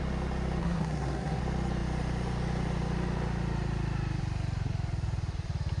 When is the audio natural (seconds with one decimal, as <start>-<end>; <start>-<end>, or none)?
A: 0.0-0.6; 1.4-5.8